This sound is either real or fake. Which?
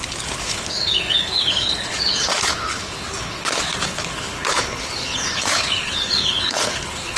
fake